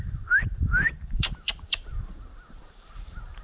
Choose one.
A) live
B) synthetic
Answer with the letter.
B